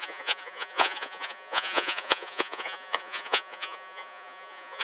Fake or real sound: fake